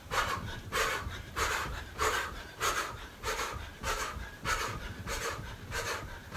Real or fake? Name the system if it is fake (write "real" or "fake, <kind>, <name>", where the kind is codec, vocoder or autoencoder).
fake, vocoder, BigVGAN v2